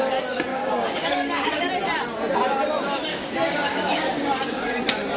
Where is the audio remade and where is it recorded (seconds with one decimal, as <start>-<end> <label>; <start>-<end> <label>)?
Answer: 0.0-0.5 recorded; 0.5-1.7 remade; 1.7-3.1 recorded; 3.1-4.8 remade; 4.8-5.2 recorded